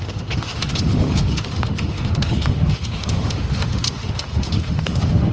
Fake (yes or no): yes